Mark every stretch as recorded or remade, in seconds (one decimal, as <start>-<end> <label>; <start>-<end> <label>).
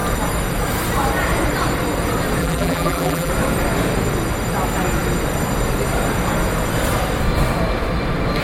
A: 0.0-2.4 recorded; 2.4-3.3 remade; 3.3-8.4 recorded